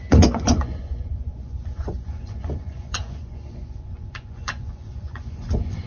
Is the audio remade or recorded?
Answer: remade